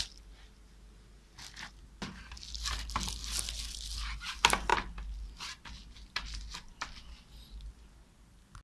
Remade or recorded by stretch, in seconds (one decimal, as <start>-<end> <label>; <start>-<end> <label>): 0.0-8.6 recorded